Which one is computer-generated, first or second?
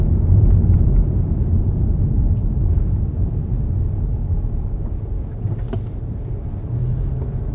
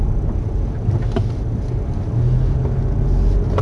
first